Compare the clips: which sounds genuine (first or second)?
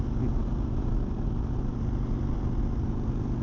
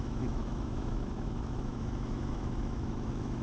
first